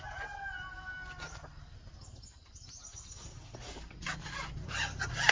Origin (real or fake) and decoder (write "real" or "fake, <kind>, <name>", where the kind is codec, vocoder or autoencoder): real